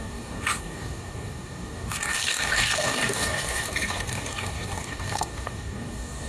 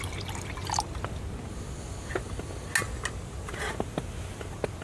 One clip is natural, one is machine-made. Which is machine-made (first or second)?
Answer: first